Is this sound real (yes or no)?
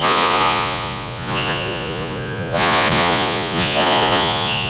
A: no